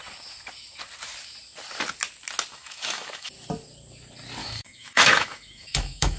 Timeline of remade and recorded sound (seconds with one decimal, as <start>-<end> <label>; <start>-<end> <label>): 0.0-2.5 recorded; 2.5-3.3 remade; 3.3-4.4 recorded; 4.4-6.2 remade